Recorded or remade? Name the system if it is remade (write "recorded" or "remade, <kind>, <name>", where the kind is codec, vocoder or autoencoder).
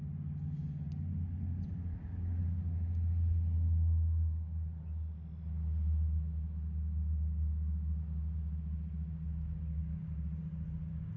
recorded